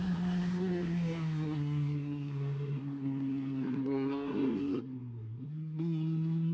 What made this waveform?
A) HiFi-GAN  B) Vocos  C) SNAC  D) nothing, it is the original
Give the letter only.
C